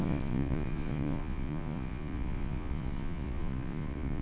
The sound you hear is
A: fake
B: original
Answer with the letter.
A